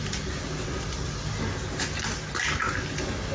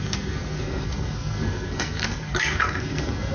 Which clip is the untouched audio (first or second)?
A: first